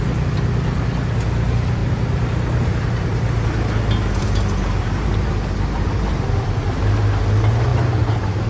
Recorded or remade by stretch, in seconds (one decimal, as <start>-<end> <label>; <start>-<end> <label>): 0.0-1.8 recorded; 1.8-6.7 remade; 6.7-8.5 recorded